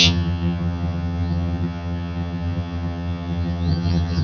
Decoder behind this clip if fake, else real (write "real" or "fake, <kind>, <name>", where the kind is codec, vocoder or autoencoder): fake, vocoder, HiFi-GAN